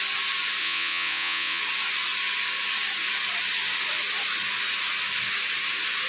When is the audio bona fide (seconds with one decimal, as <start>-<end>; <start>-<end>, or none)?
0.0-0.6; 1.6-6.1